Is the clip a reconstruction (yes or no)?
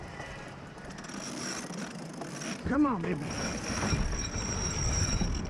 yes